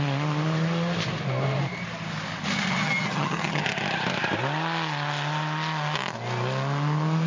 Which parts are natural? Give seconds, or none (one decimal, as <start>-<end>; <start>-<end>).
0.0-2.8; 3.6-7.3